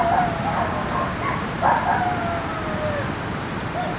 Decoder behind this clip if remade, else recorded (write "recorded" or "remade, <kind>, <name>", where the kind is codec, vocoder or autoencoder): recorded